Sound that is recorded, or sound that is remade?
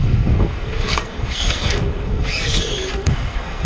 remade